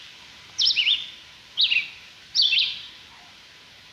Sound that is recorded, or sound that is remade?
recorded